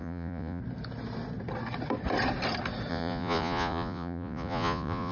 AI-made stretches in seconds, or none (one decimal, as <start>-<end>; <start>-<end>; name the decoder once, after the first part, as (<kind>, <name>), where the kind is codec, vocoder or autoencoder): 0.0-0.6 (vocoder, Vocos); 2.9-5.1